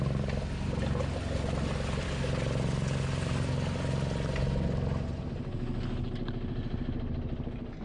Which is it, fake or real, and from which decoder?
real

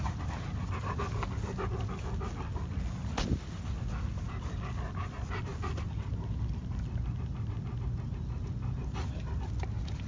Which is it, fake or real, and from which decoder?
real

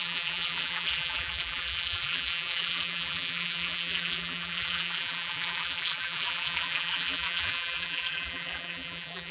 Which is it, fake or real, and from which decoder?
fake, vocoder, BigVGAN v2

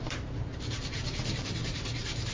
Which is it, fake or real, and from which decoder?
fake, vocoder, BigVGAN v2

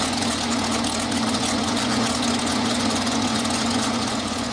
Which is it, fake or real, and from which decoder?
fake, vocoder, Vocos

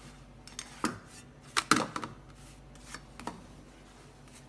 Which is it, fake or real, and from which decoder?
real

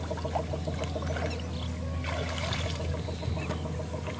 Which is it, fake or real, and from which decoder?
real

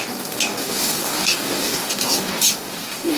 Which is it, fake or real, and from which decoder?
fake, codec, DAC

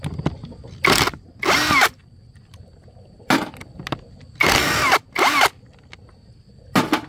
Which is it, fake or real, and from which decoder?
real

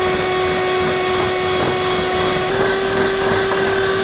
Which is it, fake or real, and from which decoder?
real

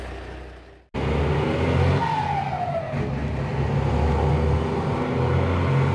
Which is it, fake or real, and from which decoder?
real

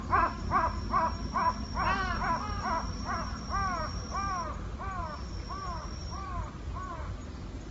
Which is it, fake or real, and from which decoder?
real